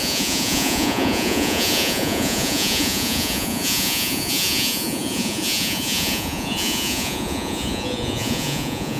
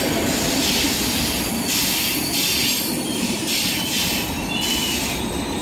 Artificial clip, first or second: first